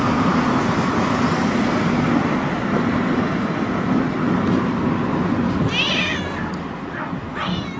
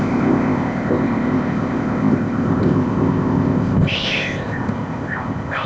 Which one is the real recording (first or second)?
first